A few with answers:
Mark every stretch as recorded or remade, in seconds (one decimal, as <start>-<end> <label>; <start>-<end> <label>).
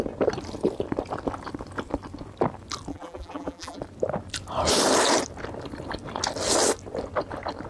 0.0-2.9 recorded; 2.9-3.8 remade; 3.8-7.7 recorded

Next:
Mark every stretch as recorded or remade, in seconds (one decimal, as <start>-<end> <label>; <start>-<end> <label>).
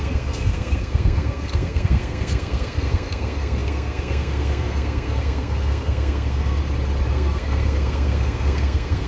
0.0-6.6 remade; 6.6-7.1 recorded; 7.1-9.1 remade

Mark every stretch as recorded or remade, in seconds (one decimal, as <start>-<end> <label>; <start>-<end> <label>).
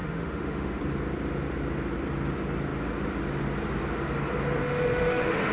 0.0-0.8 remade; 0.8-4.6 recorded; 4.6-5.5 remade